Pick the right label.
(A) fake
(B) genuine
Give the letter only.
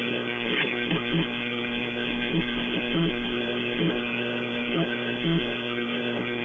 A